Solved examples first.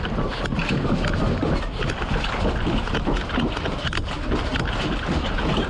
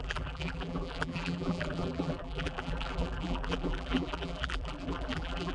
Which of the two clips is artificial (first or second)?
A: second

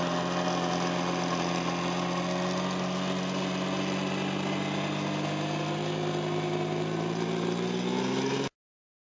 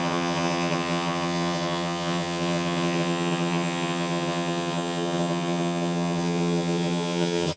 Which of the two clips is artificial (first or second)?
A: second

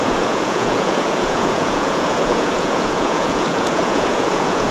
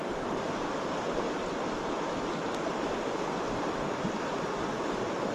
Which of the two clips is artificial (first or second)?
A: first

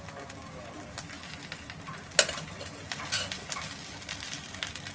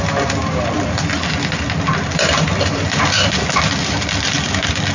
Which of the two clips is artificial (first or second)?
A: second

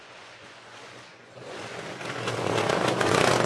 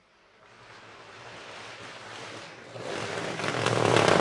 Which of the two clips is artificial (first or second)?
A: first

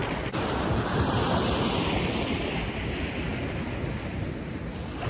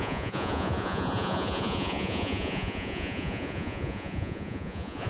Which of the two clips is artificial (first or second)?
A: second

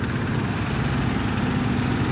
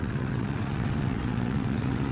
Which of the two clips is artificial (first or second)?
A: second